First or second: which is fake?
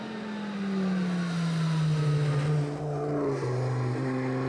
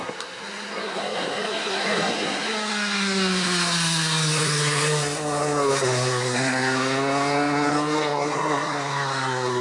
second